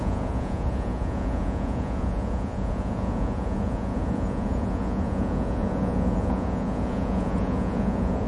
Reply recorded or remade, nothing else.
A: remade